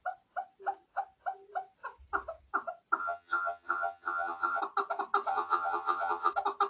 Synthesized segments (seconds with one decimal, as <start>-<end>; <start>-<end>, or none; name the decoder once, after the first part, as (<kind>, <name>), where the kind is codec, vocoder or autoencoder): 3.0-4.6 (vocoder, HiFi-GAN); 5.3-6.3